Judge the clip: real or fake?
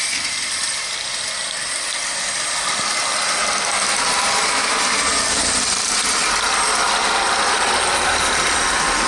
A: real